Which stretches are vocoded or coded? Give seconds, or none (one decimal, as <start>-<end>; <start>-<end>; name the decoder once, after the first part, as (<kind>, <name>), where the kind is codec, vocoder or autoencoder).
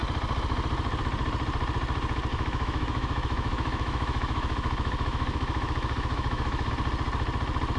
2.3-6.7 (autoencoder, DAC-VAE)